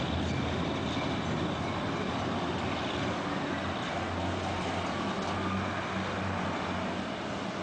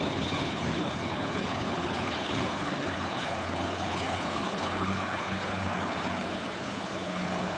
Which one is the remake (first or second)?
second